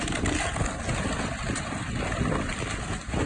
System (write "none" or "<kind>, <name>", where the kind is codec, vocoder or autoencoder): none